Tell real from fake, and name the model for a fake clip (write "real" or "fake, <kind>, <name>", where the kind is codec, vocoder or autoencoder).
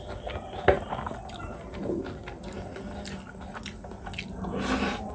real